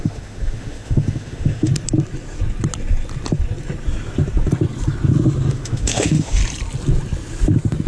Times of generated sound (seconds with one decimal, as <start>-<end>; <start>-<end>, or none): 0.0-1.7; 5.5-6.4